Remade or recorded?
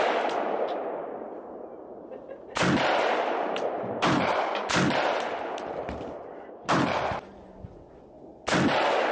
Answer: recorded